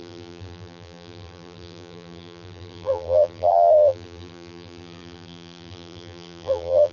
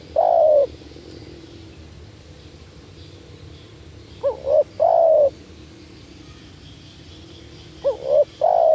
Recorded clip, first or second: second